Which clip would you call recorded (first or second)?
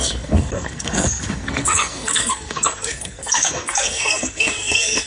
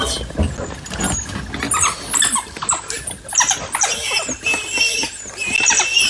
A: second